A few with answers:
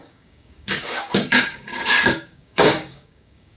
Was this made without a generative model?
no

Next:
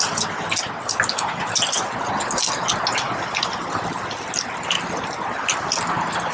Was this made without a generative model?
yes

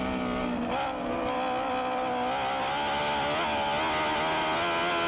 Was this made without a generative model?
yes